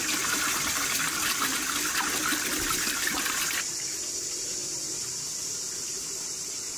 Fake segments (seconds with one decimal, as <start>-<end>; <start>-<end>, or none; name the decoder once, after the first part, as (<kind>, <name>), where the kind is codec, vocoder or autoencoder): none

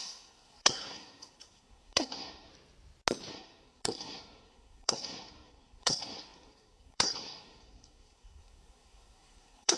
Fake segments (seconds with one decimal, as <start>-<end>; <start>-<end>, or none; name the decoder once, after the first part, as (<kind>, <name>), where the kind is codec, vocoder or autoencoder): 0.0-2.5 (codec, SNAC); 3.3-9.8